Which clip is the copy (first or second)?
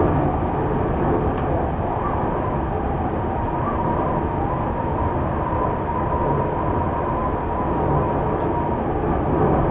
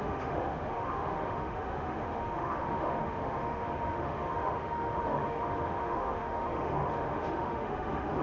second